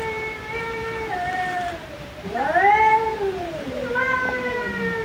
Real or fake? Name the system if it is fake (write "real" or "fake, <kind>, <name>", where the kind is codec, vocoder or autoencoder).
fake, vocoder, BigVGAN v2